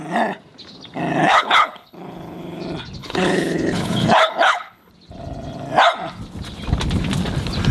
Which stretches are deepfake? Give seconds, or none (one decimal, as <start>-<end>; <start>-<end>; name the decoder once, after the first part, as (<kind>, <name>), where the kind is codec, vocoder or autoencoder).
1.2-2.6 (codec, HILCodec); 3.0-4.9